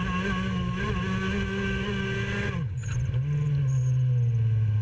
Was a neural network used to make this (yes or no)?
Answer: no